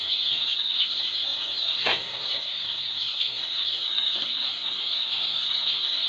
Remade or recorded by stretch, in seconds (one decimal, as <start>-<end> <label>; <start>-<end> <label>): 0.0-6.1 remade